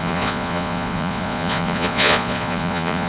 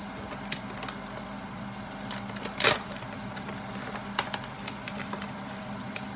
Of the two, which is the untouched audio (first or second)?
second